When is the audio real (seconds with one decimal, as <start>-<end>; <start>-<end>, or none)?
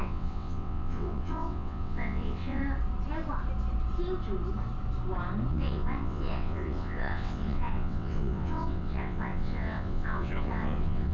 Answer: 2.6-5.5